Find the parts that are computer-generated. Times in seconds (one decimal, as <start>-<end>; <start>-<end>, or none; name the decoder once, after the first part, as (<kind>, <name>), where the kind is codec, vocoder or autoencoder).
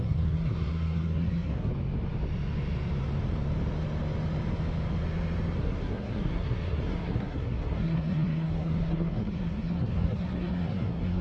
0.0-1.7 (codec, SNAC); 5.6-11.2